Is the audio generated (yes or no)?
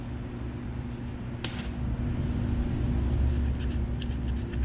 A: no